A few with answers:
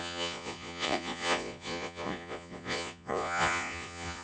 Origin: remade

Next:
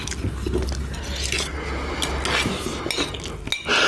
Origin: recorded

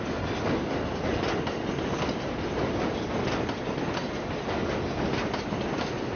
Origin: recorded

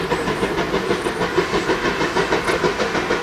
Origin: recorded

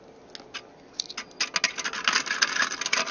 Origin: recorded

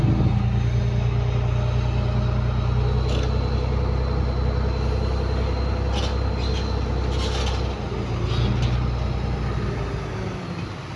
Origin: recorded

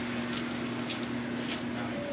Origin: recorded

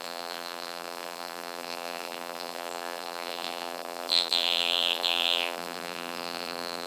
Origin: remade